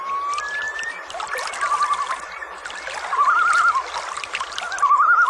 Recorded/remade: recorded